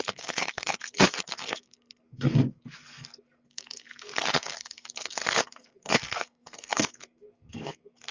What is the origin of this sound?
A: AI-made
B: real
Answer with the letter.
A